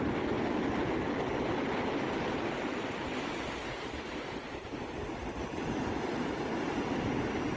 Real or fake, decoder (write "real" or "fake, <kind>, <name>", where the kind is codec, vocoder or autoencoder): real